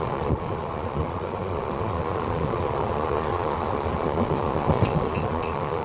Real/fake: fake